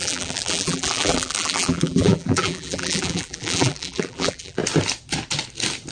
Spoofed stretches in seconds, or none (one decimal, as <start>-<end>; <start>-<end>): 0.0-4.6